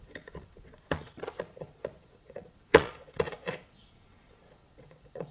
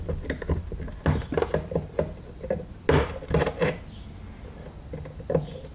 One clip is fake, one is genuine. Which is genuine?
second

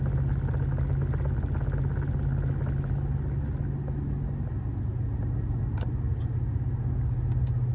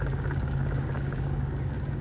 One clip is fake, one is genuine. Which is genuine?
first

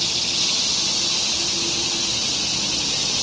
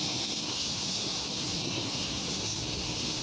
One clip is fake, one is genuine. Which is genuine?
first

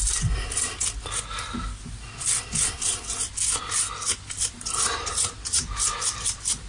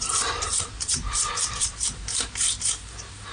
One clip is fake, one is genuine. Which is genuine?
first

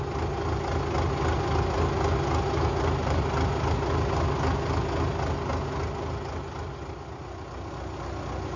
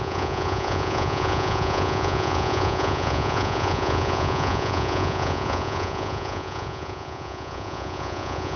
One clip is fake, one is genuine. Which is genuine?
first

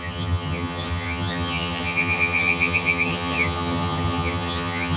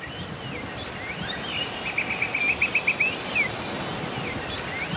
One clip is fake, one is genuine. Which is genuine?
second